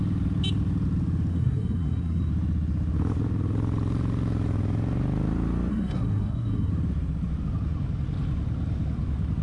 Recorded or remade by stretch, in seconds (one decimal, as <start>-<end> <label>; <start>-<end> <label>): 0.0-1.3 recorded; 1.3-2.3 remade; 2.3-5.7 recorded; 5.7-6.7 remade; 6.7-9.4 recorded